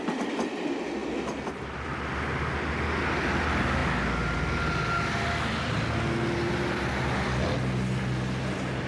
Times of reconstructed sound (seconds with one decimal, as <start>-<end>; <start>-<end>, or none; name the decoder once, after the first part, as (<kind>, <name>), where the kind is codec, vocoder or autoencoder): none